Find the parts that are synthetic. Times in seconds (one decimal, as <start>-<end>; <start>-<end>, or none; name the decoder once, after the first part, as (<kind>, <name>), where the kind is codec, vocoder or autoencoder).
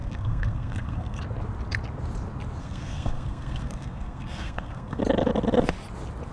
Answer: 0.0-1.2 (codec, SNAC); 2.6-5.0